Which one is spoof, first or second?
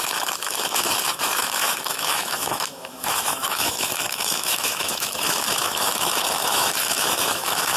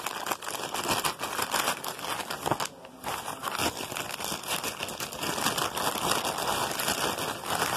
first